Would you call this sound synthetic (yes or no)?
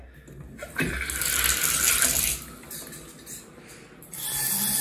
no